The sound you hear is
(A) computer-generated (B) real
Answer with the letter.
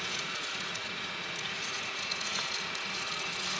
A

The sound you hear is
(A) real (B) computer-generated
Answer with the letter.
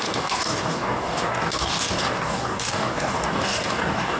B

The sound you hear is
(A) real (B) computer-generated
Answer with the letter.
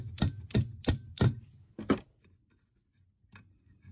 A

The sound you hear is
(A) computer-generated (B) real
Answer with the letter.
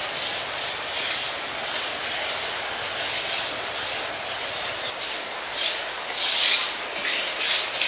B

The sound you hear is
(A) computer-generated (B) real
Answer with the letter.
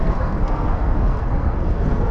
A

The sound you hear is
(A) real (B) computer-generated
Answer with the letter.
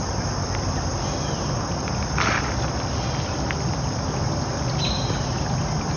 A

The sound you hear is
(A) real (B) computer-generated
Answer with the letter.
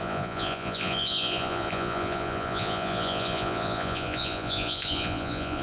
B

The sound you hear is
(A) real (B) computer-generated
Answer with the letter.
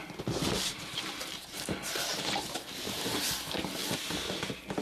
A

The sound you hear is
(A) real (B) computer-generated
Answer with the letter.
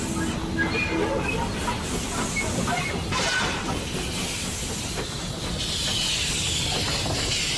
A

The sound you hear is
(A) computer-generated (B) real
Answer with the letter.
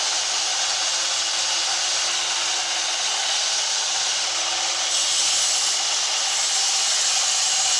B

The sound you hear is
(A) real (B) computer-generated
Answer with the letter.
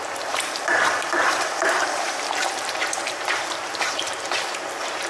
B